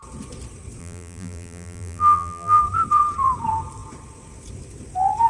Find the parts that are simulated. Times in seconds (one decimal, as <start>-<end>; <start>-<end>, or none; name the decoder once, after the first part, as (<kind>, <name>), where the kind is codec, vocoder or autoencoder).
0.8-2.6 (vocoder, BigVGAN v2)